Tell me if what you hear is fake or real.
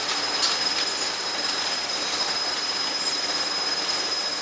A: real